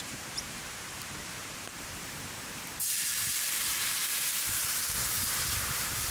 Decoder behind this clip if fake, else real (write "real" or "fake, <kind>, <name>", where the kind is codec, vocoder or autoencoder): fake, vocoder, BigVGAN v2